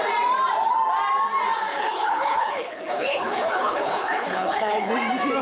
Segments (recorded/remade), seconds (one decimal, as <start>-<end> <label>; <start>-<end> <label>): 0.0-1.7 recorded; 1.7-4.9 remade; 4.9-5.4 recorded